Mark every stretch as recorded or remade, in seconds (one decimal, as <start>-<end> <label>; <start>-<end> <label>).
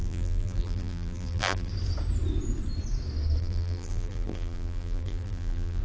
0.0-1.7 remade; 1.7-3.4 recorded; 3.4-5.8 remade